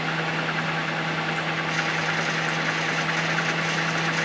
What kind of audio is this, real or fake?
real